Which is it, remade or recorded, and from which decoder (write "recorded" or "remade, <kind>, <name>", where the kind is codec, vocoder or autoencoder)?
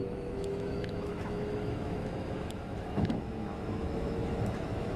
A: remade, autoencoder, DAC-VAE